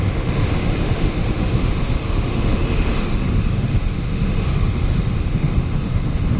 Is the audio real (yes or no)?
no